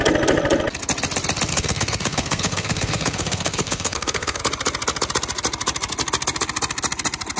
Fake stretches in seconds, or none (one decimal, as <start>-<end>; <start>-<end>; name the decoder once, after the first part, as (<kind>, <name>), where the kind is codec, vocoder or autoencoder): 1.5-4.4 (codec, SNAC)